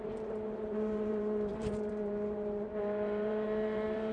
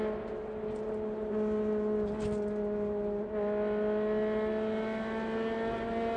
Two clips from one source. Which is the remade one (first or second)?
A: first